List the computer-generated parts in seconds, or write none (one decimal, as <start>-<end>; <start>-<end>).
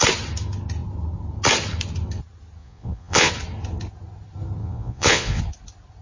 2.6-3.3; 4.6-5.4